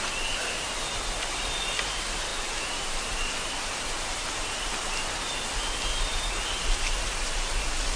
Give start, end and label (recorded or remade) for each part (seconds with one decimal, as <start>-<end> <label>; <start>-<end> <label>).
0.0-2.3 recorded; 2.3-5.3 remade; 5.3-8.0 recorded